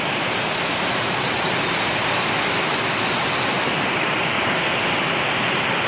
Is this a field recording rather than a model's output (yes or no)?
yes